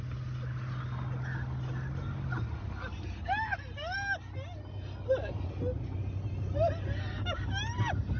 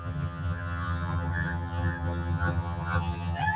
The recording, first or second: first